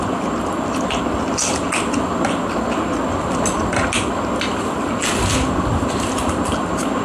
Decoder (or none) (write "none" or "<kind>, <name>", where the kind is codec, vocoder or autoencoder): none